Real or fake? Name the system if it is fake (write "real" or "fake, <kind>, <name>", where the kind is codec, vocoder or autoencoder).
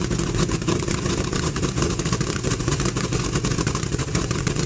fake, vocoder, Vocos